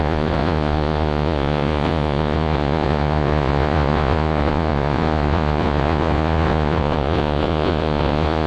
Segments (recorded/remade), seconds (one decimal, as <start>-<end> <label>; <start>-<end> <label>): 0.0-8.5 remade